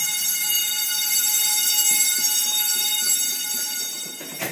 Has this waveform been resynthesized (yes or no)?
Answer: yes